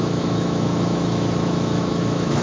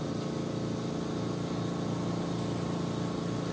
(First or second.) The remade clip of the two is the first